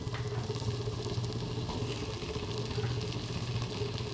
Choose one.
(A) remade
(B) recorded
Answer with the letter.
B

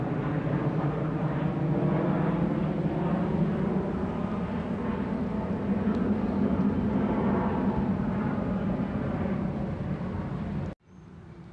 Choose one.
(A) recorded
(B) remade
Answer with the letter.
A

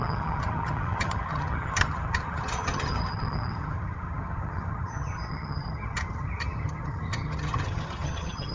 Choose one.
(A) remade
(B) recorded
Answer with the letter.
A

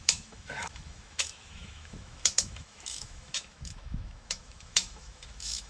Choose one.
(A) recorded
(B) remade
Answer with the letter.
B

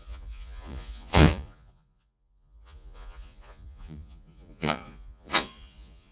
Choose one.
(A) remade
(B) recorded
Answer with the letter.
A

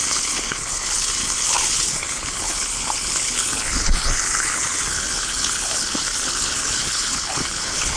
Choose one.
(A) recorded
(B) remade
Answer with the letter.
B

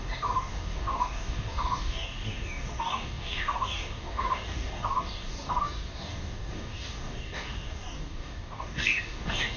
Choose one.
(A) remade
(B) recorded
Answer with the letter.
A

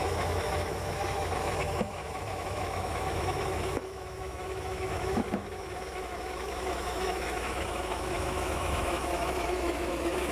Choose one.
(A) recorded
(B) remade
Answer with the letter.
B